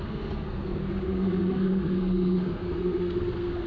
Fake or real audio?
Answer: fake